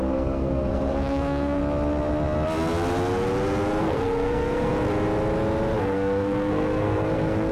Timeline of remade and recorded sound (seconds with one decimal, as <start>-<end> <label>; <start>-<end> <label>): 0.0-1.6 remade; 1.6-3.8 recorded; 3.8-4.7 remade; 4.7-5.8 recorded; 5.8-7.5 remade